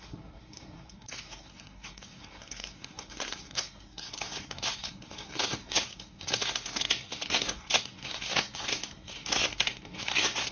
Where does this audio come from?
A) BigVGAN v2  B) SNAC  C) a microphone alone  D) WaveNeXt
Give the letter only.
B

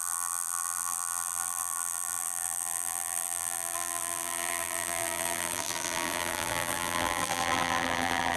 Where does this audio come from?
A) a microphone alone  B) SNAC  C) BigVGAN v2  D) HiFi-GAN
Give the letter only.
C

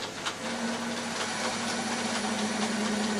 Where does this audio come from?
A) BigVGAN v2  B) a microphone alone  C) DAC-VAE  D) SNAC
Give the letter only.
B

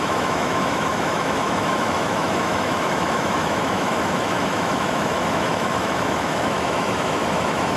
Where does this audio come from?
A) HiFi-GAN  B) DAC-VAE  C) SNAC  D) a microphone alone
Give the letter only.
B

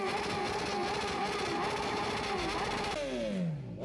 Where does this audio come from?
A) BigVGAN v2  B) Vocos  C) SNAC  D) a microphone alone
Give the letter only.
D